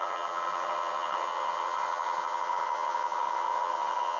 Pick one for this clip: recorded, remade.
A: remade